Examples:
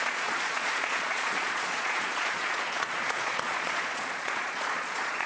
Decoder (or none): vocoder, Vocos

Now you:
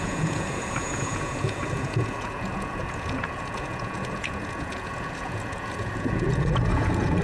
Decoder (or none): vocoder, Vocos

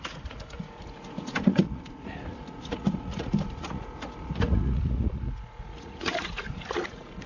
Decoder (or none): vocoder, Vocos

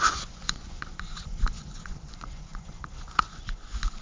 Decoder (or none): vocoder, Vocos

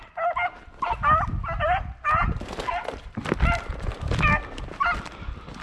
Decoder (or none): none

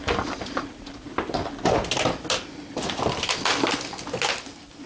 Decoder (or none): none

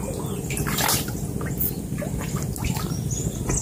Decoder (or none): none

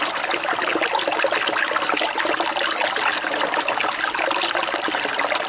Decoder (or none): none